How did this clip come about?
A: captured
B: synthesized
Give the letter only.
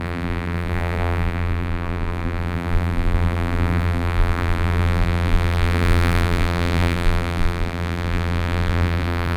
B